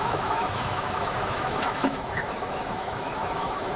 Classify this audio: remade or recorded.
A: remade